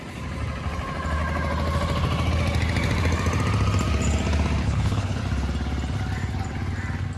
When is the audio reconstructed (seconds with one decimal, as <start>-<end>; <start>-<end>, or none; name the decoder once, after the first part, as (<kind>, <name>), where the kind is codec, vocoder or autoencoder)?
4.6-5.2 (codec, HILCodec)